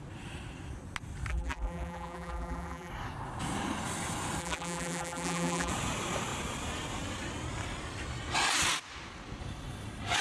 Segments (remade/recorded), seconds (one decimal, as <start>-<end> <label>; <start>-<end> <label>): 0.0-1.3 recorded; 1.3-2.9 remade; 2.9-4.4 recorded; 4.4-5.7 remade; 5.7-10.2 recorded